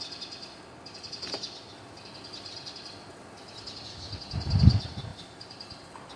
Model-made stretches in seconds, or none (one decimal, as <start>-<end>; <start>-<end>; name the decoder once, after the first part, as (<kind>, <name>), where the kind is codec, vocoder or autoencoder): 5.1-6.2 (vocoder, BigVGAN v2)